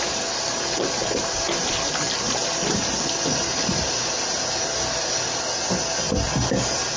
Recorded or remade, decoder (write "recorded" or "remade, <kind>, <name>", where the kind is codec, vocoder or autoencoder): recorded